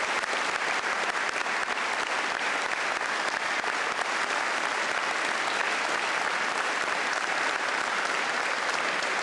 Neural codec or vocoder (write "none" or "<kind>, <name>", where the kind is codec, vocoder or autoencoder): none